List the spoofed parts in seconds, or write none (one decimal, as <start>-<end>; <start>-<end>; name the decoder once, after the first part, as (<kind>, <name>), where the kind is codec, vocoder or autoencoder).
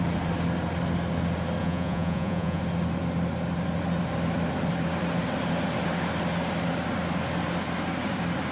1.6-2.6 (vocoder, Vocos)